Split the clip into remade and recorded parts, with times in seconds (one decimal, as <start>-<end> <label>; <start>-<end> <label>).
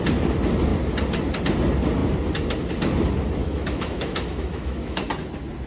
0.0-3.4 recorded; 3.4-5.1 remade; 5.1-5.7 recorded